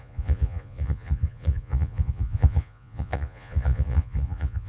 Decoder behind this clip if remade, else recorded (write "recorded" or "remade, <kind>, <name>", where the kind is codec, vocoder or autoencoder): remade, vocoder, Vocos